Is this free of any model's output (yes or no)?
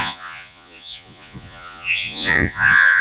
no